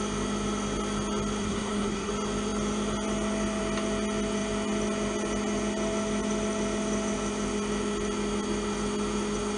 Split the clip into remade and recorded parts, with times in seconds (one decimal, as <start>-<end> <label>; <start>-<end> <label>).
0.0-1.4 recorded; 1.4-2.1 remade; 2.1-9.6 recorded